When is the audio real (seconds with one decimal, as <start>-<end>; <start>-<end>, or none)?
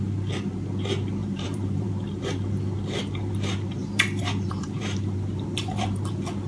0.0-1.2; 1.9-3.8; 6.1-6.5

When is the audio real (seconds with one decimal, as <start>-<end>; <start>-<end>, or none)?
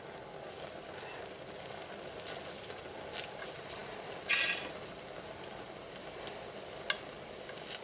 0.0-7.8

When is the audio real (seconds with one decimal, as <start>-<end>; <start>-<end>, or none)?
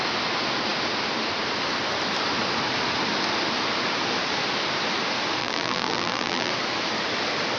0.0-5.4; 6.5-7.6